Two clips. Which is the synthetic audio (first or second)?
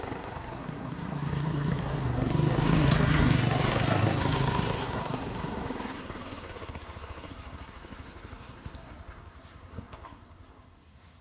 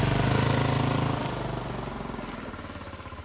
first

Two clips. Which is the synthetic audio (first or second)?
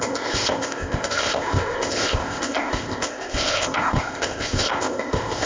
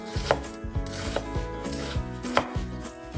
first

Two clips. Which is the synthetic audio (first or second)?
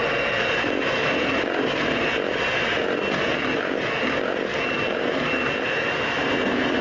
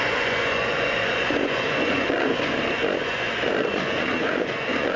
second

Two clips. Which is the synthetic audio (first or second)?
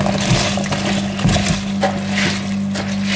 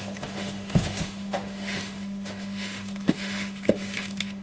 second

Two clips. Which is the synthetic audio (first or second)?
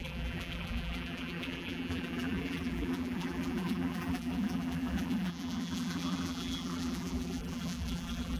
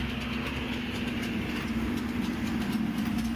first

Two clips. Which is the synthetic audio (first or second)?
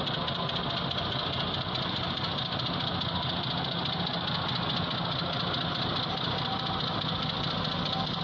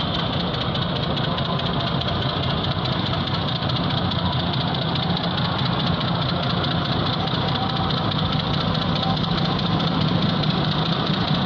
second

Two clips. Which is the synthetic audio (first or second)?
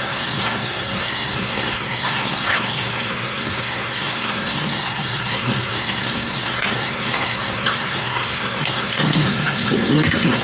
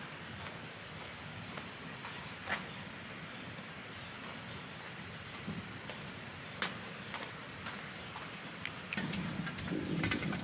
first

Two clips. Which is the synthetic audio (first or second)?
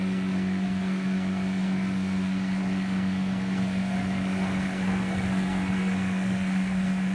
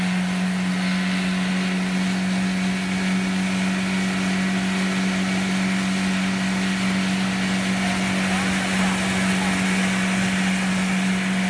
first